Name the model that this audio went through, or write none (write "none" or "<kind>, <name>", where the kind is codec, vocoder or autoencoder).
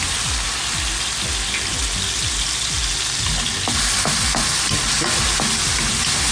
none